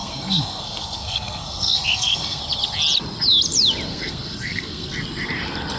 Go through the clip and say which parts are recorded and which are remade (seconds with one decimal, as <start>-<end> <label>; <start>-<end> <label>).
0.0-2.4 remade; 2.4-3.9 recorded; 3.9-4.9 remade; 4.9-5.8 recorded